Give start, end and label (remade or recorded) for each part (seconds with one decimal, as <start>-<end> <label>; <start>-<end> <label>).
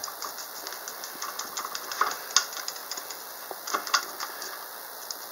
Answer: 0.0-5.3 recorded